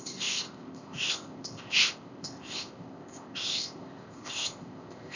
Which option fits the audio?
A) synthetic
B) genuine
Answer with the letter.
A